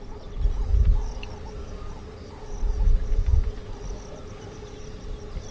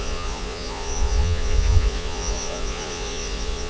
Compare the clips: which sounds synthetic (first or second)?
second